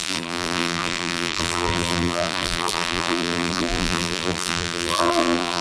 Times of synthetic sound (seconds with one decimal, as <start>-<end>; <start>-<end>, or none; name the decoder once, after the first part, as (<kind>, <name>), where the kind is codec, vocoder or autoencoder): 0.0-5.6 (vocoder, BigVGAN v2)